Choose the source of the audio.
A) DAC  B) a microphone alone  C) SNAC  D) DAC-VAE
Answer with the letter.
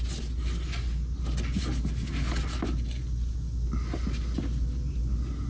B